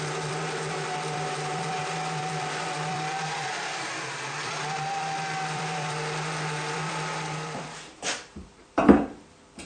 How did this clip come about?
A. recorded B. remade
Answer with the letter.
B